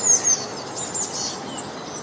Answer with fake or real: real